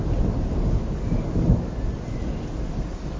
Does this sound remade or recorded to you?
recorded